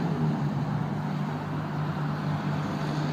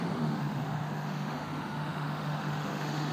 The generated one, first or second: second